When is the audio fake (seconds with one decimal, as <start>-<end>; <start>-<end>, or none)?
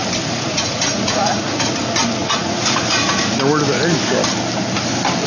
0.5-1.7; 2.2-3.2